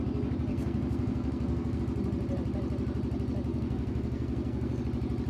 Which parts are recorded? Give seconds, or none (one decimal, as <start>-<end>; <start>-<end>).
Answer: 0.0-0.5; 1.8-3.5; 4.8-5.3